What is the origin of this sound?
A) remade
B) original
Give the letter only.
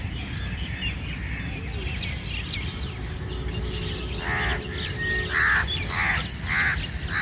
B